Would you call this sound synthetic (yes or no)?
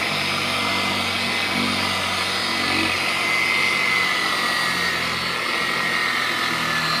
no